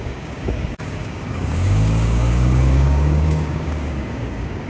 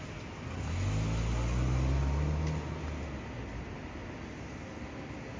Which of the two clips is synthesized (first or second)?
first